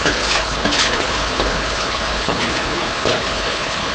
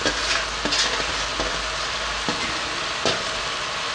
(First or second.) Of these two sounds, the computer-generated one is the first